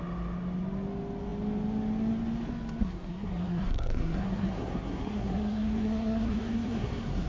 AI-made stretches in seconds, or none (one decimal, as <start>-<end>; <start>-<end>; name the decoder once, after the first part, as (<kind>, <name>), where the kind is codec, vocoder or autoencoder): 2.8-7.3 (codec, SNAC)